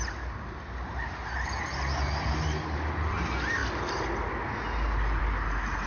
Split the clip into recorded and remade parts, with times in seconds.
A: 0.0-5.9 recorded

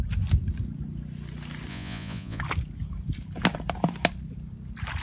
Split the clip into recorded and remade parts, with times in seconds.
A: 0.0-1.7 recorded; 1.7-2.4 remade; 2.4-5.0 recorded

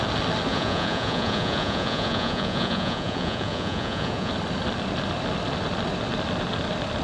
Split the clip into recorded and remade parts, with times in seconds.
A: 0.0-0.5 recorded; 0.5-4.3 remade; 4.3-7.0 recorded

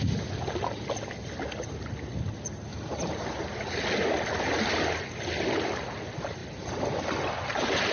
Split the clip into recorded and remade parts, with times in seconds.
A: 0.0-7.9 recorded